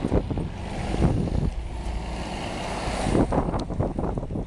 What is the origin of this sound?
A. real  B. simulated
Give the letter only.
A